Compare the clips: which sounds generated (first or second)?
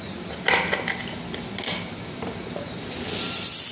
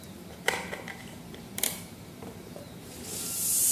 second